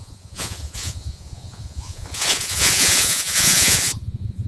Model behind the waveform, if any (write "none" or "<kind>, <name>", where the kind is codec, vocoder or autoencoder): vocoder, Vocos